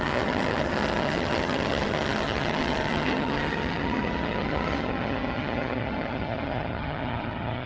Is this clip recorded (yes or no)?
no